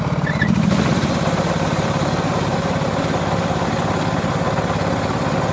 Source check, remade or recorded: recorded